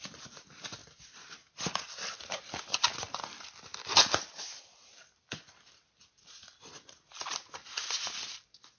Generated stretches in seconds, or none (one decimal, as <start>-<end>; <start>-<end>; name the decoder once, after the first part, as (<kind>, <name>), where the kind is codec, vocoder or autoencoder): 0.0-0.8 (vocoder, BigVGAN v2); 2.6-8.0